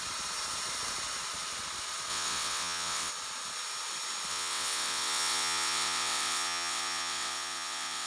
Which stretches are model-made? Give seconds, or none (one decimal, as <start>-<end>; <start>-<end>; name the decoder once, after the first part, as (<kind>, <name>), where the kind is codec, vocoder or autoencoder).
2.1-3.1 (vocoder, WaveNeXt); 4.3-8.1